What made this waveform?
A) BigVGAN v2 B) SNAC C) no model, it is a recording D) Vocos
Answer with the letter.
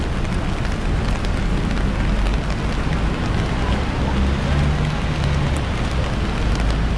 C